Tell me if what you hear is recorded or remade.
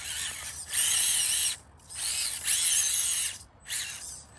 recorded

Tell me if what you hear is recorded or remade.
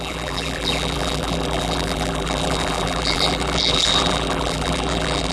remade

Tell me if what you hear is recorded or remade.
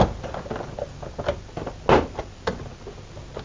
recorded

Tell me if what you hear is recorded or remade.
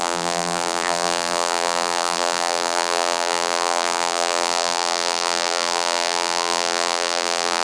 remade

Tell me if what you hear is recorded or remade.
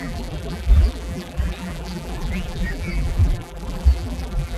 remade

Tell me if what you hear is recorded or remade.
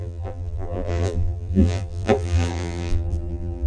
remade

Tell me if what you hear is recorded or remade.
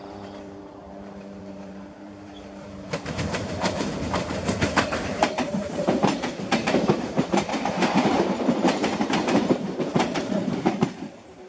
remade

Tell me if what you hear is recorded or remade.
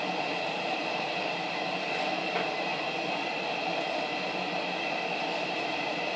remade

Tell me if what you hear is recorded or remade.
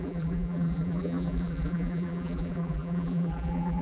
remade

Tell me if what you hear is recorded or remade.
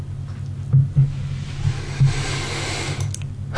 recorded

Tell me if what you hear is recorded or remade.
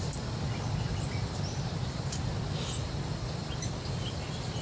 recorded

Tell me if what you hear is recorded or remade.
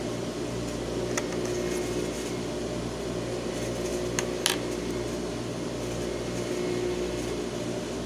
recorded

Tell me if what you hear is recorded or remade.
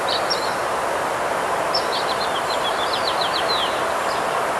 remade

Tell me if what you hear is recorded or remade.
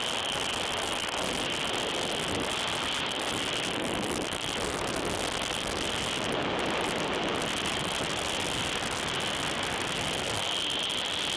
recorded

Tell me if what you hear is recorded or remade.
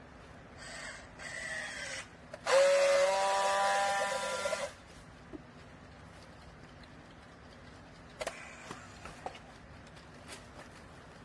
recorded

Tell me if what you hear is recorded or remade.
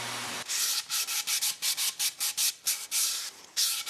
recorded